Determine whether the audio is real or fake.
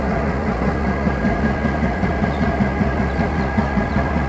fake